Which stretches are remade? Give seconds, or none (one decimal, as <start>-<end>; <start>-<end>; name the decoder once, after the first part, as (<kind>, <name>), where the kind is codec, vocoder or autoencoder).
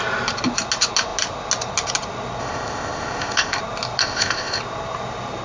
2.4-3.6 (codec, ZipCodec); 4.0-4.6